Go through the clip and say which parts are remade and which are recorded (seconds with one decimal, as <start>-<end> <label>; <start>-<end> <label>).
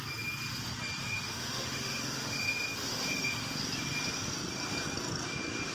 0.0-1.0 recorded; 1.0-2.5 remade; 2.5-2.9 recorded; 2.9-3.6 remade; 3.6-5.7 recorded